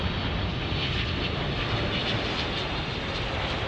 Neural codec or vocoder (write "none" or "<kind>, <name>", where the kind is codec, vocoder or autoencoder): none